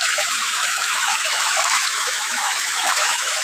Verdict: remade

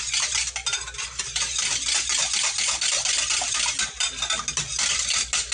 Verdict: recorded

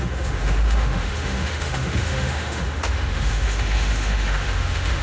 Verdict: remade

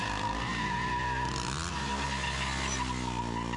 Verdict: recorded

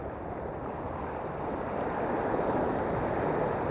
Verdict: recorded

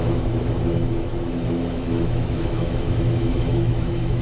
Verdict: remade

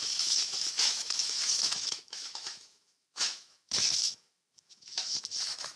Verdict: remade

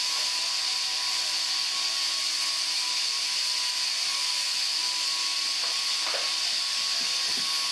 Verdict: recorded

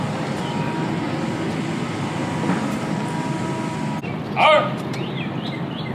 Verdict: recorded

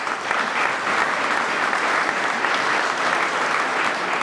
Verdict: recorded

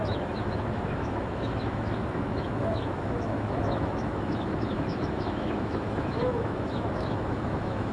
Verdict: remade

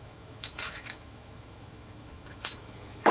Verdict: remade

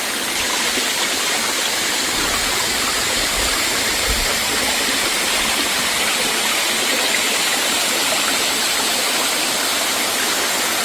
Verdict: recorded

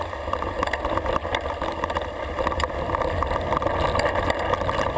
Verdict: recorded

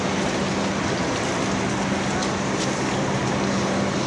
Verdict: recorded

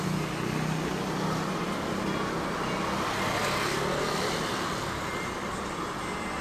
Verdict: recorded